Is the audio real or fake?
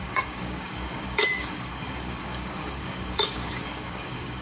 fake